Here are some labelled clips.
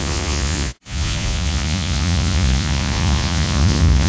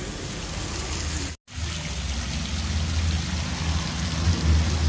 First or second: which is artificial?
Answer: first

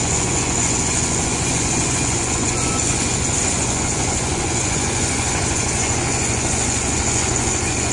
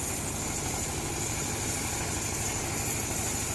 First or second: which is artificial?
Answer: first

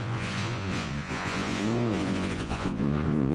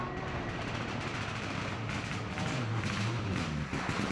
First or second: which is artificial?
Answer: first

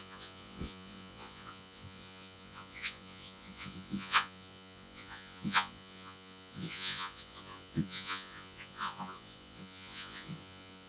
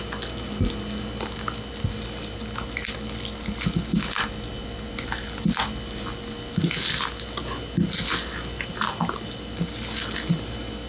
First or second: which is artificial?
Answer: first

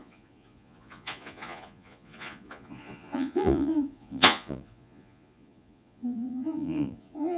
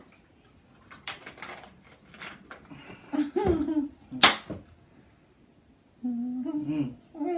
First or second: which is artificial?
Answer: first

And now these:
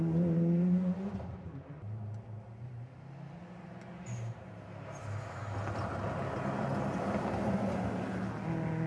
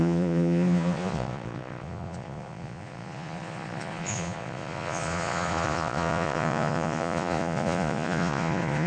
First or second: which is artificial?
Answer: second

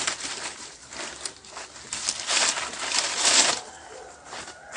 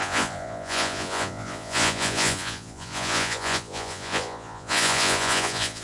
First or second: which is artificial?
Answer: second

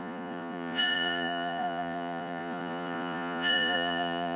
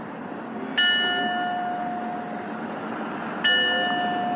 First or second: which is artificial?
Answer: first